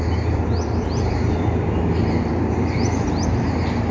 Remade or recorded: remade